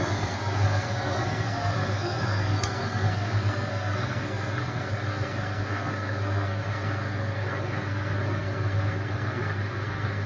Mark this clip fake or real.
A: fake